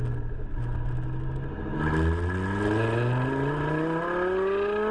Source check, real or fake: real